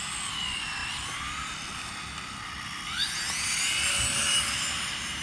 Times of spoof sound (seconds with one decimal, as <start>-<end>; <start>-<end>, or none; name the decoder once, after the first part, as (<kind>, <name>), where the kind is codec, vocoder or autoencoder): none